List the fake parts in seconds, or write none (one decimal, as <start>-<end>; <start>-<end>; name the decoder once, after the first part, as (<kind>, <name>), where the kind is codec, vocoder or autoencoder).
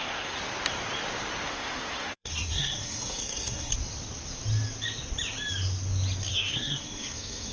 0.0-0.4 (codec, SNAC); 1.5-3.7; 6.3-7.5